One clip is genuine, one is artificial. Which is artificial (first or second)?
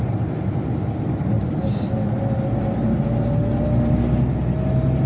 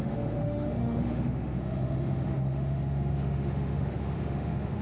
second